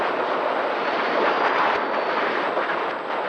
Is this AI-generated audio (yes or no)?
no